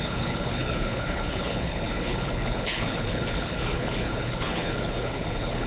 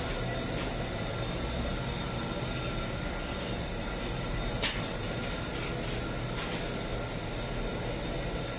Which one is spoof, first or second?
first